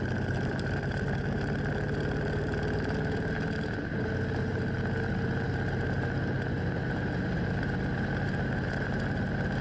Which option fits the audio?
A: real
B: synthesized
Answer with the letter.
A